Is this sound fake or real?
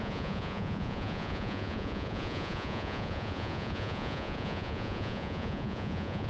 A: fake